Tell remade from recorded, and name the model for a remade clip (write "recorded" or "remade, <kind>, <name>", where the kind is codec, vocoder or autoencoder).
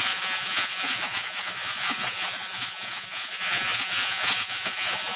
remade, vocoder, Vocos